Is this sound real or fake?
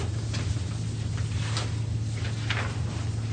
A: real